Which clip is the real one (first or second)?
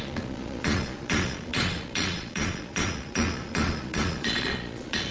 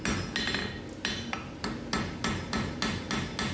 second